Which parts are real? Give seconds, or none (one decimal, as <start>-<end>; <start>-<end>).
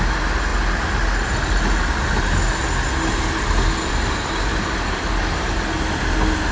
0.0-6.5